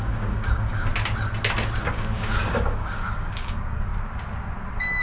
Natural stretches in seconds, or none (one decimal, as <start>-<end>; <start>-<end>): 0.9-1.8; 3.9-5.0